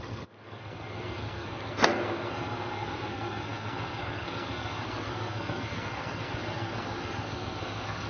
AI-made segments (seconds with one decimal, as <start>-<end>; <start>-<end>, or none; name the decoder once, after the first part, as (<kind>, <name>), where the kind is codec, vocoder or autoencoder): 0.0-8.1 (codec, SNAC)